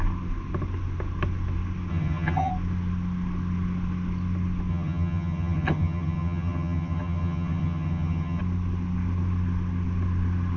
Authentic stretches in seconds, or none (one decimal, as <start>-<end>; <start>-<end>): 0.0-1.9; 2.5-4.7; 8.4-10.6